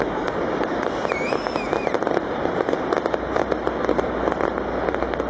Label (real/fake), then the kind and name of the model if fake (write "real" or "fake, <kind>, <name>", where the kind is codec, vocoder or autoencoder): fake, vocoder, BigVGAN v2